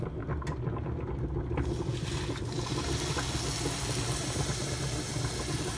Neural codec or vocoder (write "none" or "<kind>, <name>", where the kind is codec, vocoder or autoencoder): none